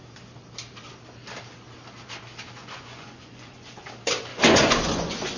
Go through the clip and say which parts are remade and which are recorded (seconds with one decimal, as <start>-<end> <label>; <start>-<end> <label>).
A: 0.0-2.6 recorded; 2.6-3.9 remade; 3.9-4.3 recorded; 4.3-5.4 remade